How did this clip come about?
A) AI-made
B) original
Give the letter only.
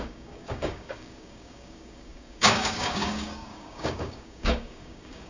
A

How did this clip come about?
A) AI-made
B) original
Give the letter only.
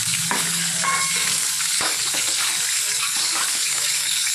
A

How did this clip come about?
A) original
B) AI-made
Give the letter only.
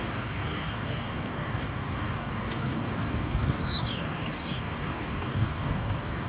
B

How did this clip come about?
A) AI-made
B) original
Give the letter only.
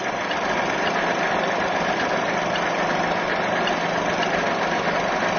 B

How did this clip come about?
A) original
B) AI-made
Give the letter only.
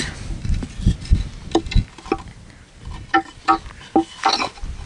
A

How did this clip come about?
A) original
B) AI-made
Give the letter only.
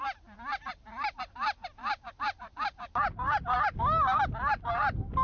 A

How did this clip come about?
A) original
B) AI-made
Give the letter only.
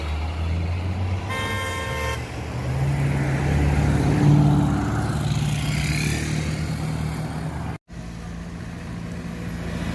A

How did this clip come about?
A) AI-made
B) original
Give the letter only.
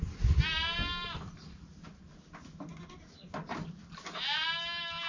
B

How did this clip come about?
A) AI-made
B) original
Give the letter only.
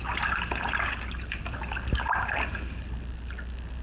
B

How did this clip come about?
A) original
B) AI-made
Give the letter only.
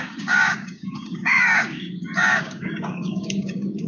B